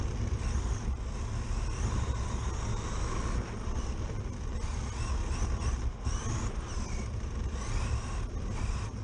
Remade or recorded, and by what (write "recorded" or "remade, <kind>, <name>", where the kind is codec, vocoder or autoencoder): recorded